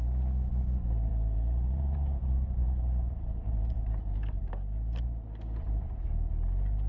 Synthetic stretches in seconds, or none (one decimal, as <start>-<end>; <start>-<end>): 1.1-4.5